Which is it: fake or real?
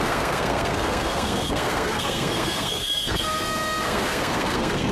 fake